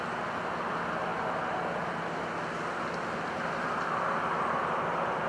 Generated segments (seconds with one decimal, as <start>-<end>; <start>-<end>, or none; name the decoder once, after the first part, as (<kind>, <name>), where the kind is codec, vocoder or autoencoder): none

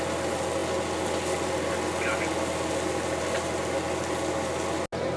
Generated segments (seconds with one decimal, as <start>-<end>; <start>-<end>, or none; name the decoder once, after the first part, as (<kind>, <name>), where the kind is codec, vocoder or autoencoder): none

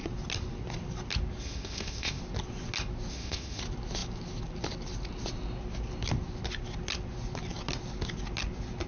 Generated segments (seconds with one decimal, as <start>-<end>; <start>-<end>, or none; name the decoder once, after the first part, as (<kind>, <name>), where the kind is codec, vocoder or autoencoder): 1.4-2.2 (codec, ZipCodec); 3.1-3.6